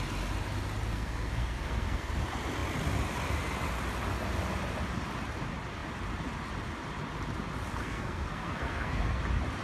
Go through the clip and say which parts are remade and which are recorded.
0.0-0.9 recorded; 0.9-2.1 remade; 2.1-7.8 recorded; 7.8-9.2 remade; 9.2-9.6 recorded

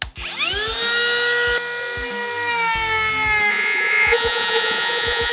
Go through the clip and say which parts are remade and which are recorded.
0.0-3.5 recorded; 3.5-5.3 remade

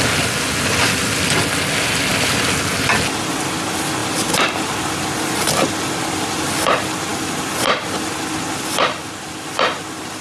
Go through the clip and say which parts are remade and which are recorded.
0.0-10.2 recorded

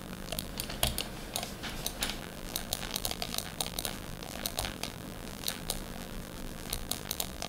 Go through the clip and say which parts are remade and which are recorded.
0.0-0.5 remade; 0.5-2.2 recorded; 2.2-7.5 remade

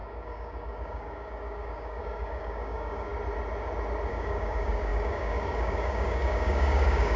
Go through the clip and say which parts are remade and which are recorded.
0.0-3.1 remade; 3.1-4.1 recorded; 4.1-7.2 remade

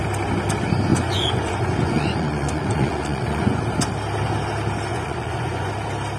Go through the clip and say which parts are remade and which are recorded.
0.0-0.9 recorded; 0.9-3.6 remade; 3.6-4.9 recorded; 4.9-5.7 remade; 5.7-6.2 recorded

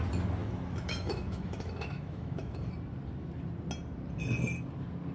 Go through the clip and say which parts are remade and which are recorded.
0.0-0.4 recorded; 0.4-2.7 remade; 2.7-5.1 recorded

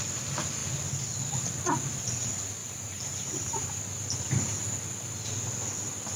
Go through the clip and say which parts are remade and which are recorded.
0.0-2.6 recorded; 2.6-3.8 remade; 3.8-6.2 recorded